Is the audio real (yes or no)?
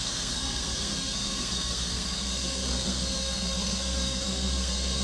no